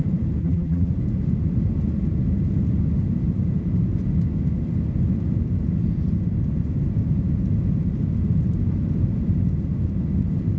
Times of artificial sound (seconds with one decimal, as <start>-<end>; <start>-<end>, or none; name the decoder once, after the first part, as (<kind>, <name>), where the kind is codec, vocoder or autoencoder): 0.4-0.9 (vocoder, BigVGAN v2)